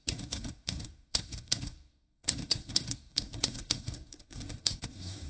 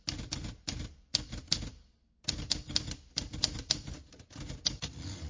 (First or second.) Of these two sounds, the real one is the second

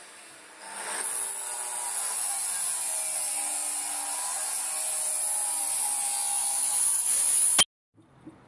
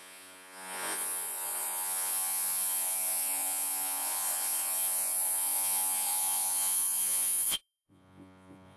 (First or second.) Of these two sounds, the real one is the first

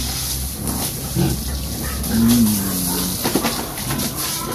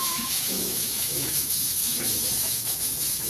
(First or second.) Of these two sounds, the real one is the first